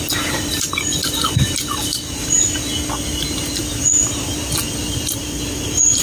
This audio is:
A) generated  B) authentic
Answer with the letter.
B